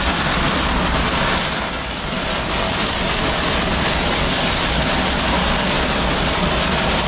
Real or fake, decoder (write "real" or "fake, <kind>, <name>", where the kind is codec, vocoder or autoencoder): real